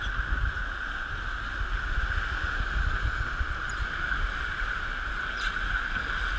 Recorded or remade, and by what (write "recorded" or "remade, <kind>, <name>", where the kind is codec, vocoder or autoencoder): recorded